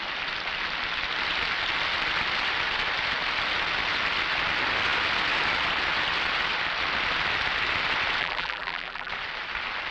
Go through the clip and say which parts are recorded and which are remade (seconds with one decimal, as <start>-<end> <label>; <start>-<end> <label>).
0.0-8.2 recorded; 8.2-9.1 remade; 9.1-9.9 recorded